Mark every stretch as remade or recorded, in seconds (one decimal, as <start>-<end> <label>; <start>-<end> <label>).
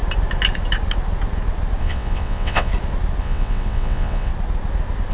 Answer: 0.0-1.8 recorded; 1.8-2.7 remade; 2.7-3.2 recorded; 3.2-4.3 remade; 4.3-5.1 recorded